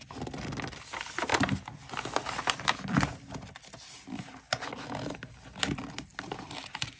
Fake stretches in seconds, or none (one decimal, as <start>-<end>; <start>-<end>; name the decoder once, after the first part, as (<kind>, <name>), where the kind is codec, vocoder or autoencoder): none